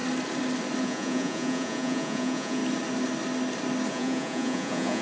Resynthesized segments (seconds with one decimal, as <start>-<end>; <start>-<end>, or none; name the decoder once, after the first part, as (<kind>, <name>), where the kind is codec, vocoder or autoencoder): 0.8-2.6 (vocoder, Vocos); 3.9-5.0